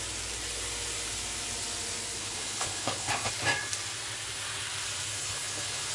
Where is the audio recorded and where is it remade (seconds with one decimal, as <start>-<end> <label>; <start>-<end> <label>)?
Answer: 0.0-2.2 recorded; 2.2-3.3 remade; 3.3-5.1 recorded; 5.1-5.9 remade